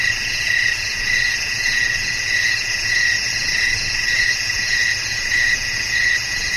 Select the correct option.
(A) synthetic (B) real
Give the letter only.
A